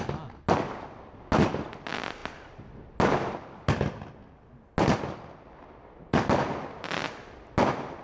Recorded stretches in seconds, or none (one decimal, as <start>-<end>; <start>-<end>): 0.0-8.0